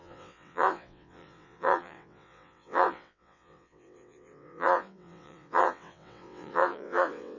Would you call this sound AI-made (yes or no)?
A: yes